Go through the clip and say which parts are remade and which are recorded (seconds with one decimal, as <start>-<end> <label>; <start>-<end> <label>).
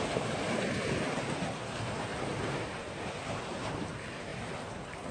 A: 0.0-5.1 recorded